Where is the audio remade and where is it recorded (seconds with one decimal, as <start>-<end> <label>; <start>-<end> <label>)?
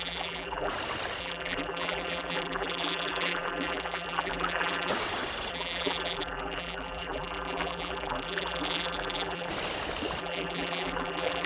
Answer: 0.0-0.7 remade; 0.7-1.2 recorded; 1.2-4.9 remade; 4.9-5.5 recorded; 5.5-9.5 remade; 9.5-10.2 recorded; 10.2-11.5 remade